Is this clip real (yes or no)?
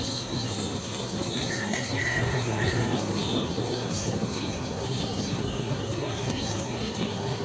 no